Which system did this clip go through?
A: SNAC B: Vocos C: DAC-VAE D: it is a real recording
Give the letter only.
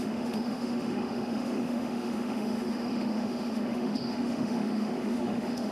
C